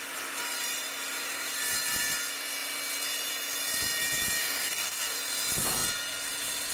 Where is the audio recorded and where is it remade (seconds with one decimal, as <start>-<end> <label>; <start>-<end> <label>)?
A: 0.0-4.4 recorded; 4.4-5.2 remade; 5.2-6.7 recorded